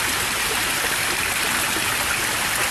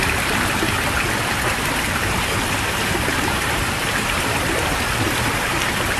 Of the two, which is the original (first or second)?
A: first